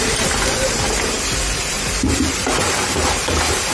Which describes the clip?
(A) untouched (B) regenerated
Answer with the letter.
B